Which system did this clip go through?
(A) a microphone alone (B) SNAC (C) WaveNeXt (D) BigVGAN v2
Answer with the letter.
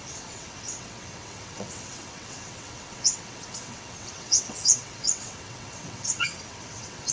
C